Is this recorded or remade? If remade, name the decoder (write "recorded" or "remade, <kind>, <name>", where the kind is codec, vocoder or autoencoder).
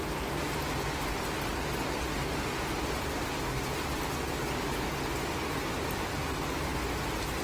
recorded